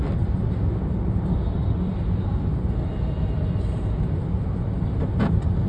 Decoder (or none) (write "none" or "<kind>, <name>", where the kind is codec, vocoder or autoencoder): none